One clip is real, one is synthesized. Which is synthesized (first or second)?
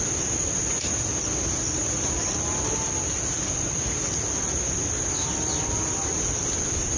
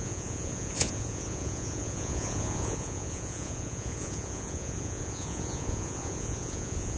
second